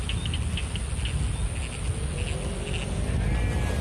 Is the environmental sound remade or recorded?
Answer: recorded